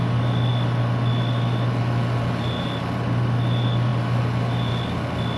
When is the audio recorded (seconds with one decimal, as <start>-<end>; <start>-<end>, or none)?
0.0-5.4